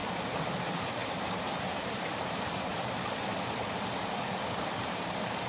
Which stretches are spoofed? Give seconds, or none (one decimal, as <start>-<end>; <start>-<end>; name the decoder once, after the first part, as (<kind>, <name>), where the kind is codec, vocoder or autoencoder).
0.6-1.0 (vocoder, BigVGAN v2); 1.6-2.7; 4.6-5.5